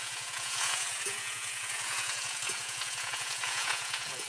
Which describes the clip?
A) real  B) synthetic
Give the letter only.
B